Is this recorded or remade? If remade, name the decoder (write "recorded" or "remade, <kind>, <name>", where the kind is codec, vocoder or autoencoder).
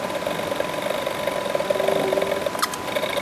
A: recorded